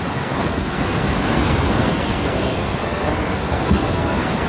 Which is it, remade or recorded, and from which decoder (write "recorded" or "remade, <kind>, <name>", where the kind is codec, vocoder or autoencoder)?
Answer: remade, codec, SNAC